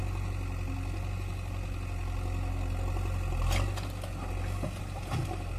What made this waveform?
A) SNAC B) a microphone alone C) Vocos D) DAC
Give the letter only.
B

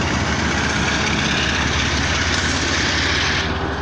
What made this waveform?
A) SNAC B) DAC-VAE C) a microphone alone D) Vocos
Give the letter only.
C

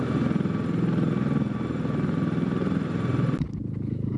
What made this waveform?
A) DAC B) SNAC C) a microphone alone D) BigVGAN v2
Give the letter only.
C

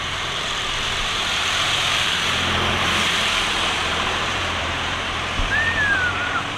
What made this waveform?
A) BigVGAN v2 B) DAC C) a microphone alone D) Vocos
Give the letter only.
A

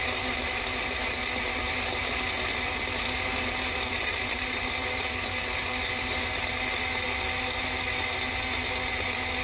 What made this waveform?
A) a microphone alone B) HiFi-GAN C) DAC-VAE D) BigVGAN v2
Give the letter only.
A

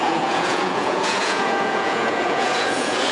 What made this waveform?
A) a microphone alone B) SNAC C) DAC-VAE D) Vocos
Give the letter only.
D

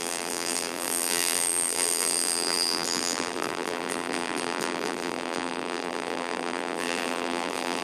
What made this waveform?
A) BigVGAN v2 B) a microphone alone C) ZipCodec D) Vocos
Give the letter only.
A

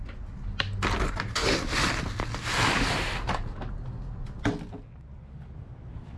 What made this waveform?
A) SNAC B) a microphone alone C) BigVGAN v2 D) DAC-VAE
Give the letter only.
B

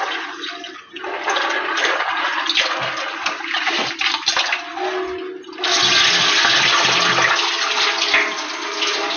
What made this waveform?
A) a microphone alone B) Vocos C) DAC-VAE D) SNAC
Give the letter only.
A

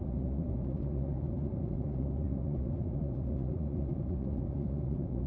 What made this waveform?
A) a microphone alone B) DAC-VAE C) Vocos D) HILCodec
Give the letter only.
C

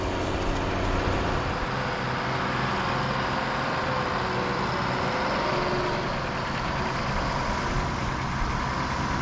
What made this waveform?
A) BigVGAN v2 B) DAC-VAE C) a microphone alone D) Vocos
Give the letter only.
C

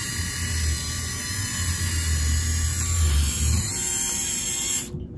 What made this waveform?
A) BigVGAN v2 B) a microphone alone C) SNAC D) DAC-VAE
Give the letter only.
B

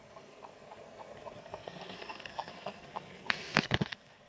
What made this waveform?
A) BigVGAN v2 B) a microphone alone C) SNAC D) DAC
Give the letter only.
C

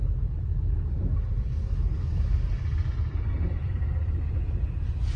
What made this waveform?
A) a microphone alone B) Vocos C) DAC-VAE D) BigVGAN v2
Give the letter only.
A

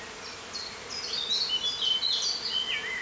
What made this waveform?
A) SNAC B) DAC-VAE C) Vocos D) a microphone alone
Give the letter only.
D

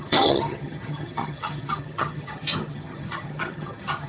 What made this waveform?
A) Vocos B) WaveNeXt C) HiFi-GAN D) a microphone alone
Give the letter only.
C